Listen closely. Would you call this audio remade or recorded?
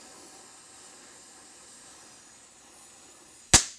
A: recorded